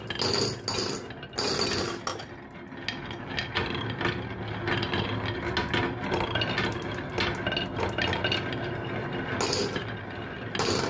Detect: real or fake real